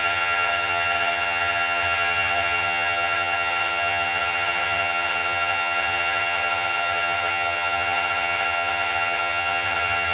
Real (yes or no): no